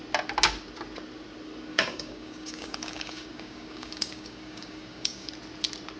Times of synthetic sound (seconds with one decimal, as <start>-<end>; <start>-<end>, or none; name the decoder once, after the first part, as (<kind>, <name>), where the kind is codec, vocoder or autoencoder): 1.7-5.3 (codec, DAC)